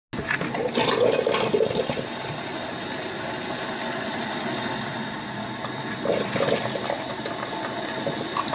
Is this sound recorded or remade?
recorded